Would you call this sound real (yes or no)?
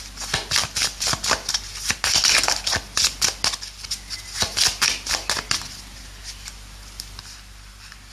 yes